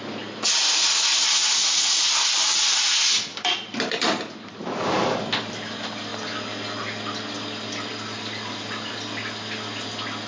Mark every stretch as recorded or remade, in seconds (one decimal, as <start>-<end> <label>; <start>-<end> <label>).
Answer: 0.0-10.3 recorded